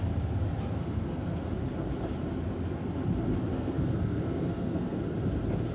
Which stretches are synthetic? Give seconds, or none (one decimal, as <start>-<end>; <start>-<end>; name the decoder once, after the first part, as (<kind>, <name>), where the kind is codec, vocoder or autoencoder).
0.8-1.4 (codec, SNAC); 3.5-5.0